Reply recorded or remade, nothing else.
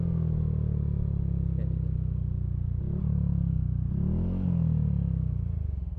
recorded